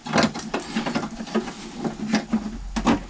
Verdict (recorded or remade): recorded